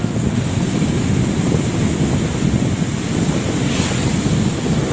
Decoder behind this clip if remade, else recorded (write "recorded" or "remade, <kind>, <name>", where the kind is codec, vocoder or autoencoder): recorded